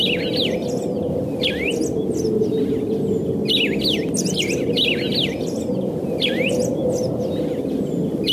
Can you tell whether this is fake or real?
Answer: real